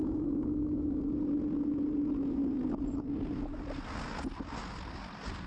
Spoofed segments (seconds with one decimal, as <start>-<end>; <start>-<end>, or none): 0.0-1.0